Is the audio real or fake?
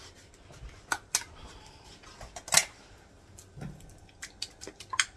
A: real